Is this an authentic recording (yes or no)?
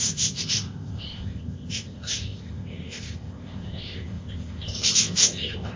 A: no